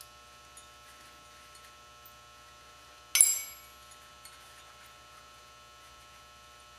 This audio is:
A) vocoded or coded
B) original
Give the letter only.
B